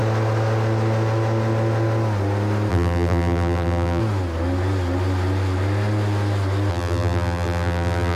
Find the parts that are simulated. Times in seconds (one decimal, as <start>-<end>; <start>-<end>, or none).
2.7-4.0; 6.7-8.2